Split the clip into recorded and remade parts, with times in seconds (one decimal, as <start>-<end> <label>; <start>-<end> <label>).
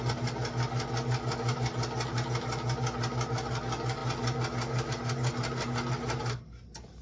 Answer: 0.0-7.0 recorded